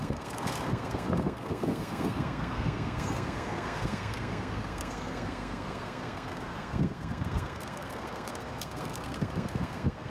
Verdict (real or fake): fake